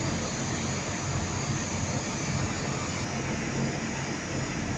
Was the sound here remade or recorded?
recorded